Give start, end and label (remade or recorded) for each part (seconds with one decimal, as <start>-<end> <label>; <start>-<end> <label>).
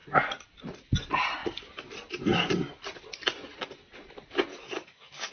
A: 0.0-4.5 recorded; 4.5-5.3 remade